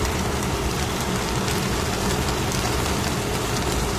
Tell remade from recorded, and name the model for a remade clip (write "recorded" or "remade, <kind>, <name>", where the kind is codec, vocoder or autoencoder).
remade, vocoder, BigVGAN v2